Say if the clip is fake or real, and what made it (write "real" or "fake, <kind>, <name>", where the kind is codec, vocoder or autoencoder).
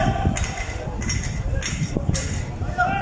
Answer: real